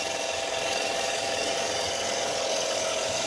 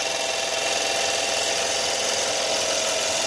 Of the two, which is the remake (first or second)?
first